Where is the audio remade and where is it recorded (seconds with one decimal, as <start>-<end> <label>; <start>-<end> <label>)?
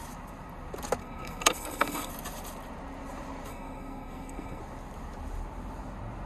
0.0-1.0 recorded; 1.0-2.1 remade; 2.1-3.5 recorded; 3.5-4.6 remade; 4.6-6.3 recorded